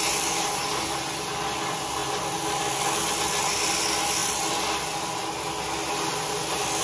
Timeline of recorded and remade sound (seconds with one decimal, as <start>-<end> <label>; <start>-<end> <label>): 0.0-6.8 recorded